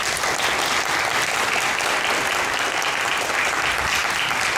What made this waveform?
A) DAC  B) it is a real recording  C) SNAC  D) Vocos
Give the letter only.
B